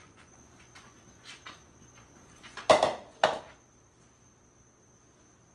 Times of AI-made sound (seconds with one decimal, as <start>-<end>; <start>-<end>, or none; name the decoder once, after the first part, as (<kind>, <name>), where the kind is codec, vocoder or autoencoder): 0.0-2.7 (vocoder, Vocos)